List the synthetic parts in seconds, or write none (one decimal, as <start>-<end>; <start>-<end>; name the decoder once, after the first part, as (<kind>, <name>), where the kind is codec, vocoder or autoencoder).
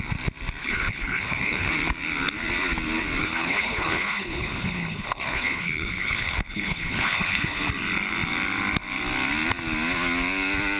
0.6-1.7 (codec, HILCodec); 3.2-7.6